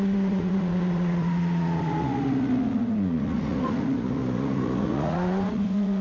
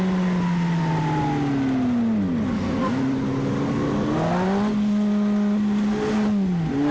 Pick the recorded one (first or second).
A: second